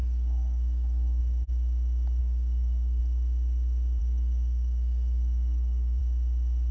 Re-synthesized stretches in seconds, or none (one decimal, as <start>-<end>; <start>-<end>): 0.0-1.2; 2.2-3.0; 4.0-6.0